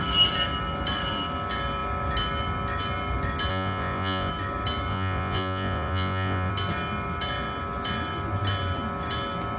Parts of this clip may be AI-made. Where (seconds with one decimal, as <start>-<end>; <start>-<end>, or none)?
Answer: 3.5-4.3; 4.9-6.5